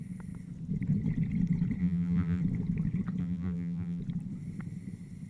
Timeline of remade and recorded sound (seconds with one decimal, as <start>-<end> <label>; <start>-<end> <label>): 0.0-1.8 recorded; 1.8-2.4 remade; 2.4-3.2 recorded; 3.2-4.0 remade; 4.0-5.3 recorded